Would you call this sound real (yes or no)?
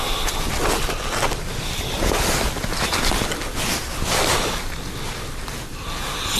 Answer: yes